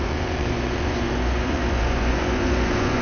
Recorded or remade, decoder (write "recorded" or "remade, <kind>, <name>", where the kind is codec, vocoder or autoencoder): remade, vocoder, Vocos